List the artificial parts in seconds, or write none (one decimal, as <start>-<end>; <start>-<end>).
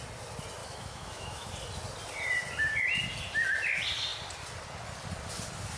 0.6-1.5